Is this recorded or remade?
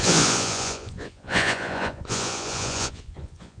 remade